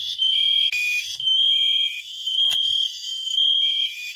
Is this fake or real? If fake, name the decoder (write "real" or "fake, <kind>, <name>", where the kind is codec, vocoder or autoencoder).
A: fake, autoencoder, DAC-VAE